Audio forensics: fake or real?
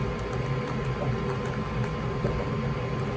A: real